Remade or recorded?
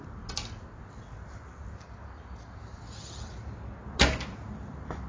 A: recorded